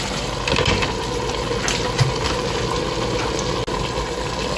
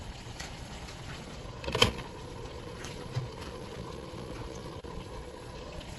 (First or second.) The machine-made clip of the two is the second